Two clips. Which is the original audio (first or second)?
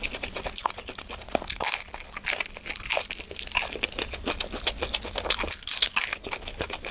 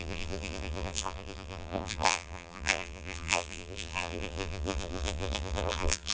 first